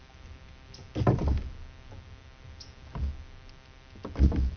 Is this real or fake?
real